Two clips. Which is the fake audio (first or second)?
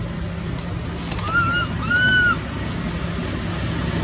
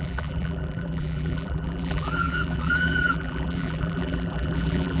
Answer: second